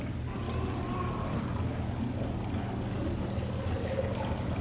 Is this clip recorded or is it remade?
recorded